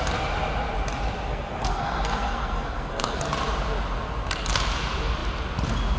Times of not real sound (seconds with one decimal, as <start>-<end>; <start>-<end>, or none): 1.3-3.2